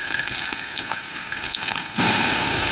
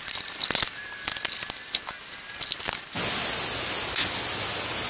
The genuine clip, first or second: second